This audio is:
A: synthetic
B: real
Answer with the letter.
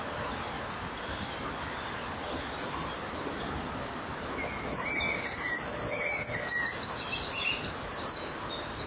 B